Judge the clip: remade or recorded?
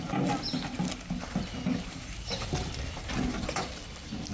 recorded